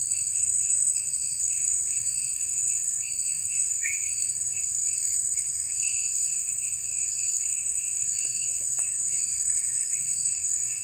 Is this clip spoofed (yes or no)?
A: yes